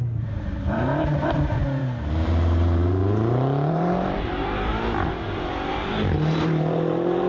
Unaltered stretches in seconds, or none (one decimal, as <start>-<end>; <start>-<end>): 3.0-3.7; 4.7-5.7